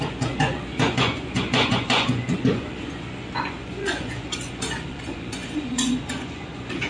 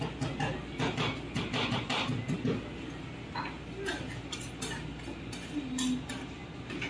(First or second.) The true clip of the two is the second